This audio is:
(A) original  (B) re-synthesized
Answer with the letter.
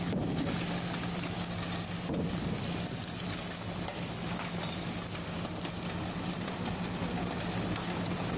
A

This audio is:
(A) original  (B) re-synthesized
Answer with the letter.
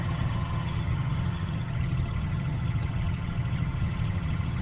B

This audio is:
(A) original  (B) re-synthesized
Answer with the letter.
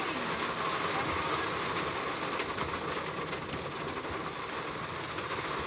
A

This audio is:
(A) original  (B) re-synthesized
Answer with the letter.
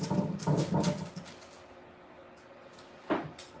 A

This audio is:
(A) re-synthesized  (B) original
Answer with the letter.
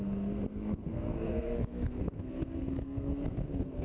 A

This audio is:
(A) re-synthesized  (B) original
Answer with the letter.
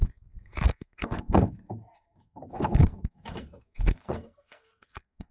A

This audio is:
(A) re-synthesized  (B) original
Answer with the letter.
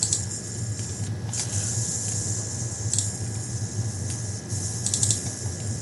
B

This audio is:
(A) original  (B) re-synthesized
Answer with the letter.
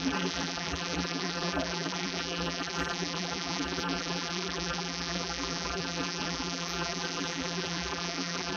B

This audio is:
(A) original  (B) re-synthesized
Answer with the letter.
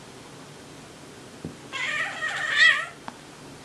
A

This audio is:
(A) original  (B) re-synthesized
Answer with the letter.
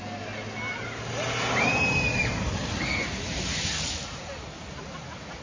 A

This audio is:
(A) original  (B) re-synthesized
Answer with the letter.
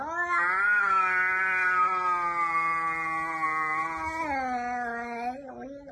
A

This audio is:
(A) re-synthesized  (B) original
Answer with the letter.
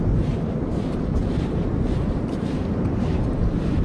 A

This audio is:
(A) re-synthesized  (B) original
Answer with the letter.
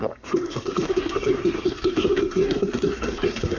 A